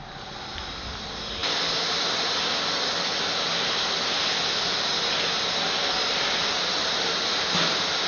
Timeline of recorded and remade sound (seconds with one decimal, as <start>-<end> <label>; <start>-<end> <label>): 0.0-8.1 recorded